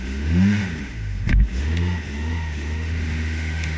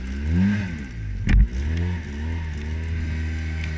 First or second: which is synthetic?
first